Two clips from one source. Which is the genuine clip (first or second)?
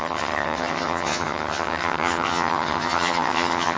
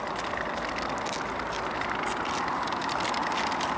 second